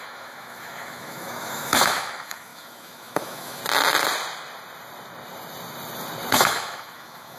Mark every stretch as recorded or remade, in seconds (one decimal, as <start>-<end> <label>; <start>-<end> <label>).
0.0-3.6 remade; 3.6-6.3 recorded; 6.3-7.4 remade